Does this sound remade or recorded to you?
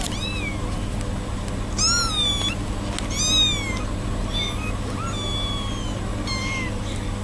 recorded